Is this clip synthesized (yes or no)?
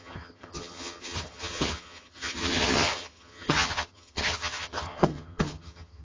yes